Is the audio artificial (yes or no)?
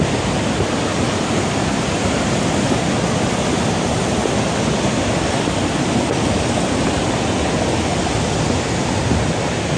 no